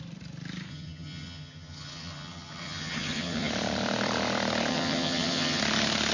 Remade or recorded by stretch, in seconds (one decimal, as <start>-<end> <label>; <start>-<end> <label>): 0.0-0.7 recorded; 0.7-3.5 remade; 3.5-4.7 recorded; 4.7-5.6 remade; 5.6-6.1 recorded